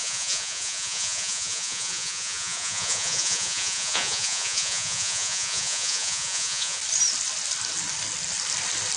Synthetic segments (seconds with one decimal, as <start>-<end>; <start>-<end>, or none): 0.0-6.8